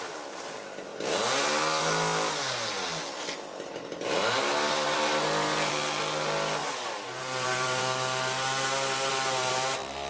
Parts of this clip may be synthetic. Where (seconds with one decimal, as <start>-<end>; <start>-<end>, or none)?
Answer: 3.7-5.7; 6.6-7.8; 9.1-10.1